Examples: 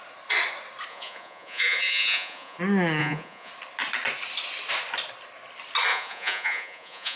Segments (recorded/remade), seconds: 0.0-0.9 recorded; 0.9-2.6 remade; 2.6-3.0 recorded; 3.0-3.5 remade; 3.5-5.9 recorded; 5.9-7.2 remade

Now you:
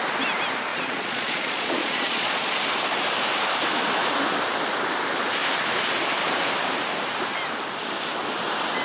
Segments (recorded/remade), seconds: 0.0-0.7 recorded; 0.7-2.5 remade; 2.5-8.8 recorded

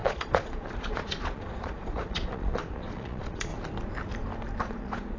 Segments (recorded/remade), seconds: 0.0-3.5 remade; 3.5-4.6 recorded; 4.6-5.2 remade